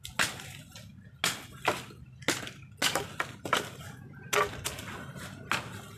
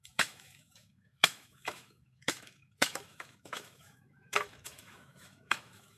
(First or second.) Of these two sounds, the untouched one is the first